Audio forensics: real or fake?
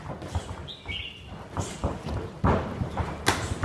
real